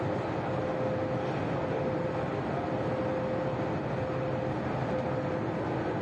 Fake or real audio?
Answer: real